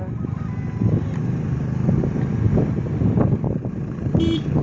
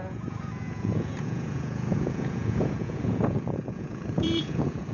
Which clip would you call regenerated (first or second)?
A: second